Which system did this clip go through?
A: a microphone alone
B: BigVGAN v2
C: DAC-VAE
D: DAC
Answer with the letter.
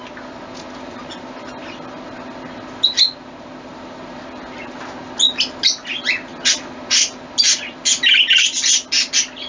A